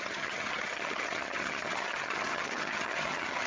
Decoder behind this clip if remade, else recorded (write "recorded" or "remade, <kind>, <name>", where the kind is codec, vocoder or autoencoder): remade, vocoder, HiFi-GAN